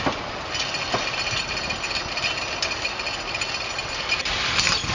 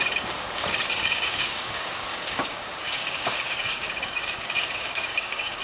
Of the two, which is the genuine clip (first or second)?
first